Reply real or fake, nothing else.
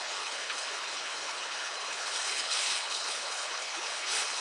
fake